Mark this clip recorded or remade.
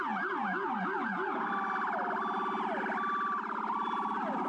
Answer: recorded